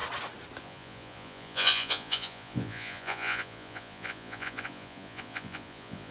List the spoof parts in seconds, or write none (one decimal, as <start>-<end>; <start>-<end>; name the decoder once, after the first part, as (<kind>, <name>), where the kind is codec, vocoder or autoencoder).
0.6-6.1 (vocoder, Vocos)